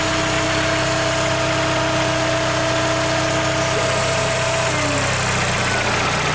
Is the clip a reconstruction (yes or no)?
no